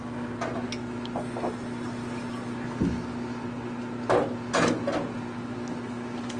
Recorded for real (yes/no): yes